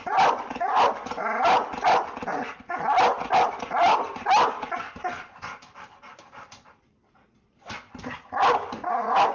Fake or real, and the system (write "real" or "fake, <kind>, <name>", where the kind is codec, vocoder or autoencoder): real